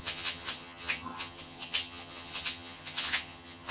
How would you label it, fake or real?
fake